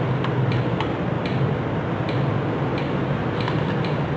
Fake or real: real